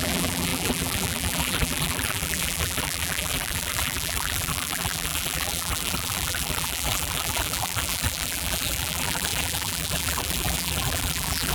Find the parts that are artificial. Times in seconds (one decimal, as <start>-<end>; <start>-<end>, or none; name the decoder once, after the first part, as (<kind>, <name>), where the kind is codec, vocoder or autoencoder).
0.0-11.5 (vocoder, BigVGAN v2)